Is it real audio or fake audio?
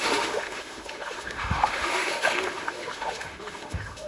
fake